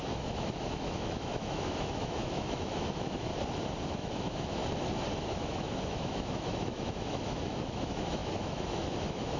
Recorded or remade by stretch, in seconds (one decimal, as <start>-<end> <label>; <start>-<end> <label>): 0.0-3.3 remade; 3.3-3.9 recorded; 3.9-4.6 remade; 4.6-5.2 recorded; 5.2-9.4 remade